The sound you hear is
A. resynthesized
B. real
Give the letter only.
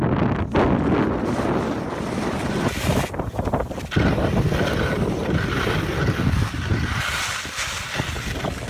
B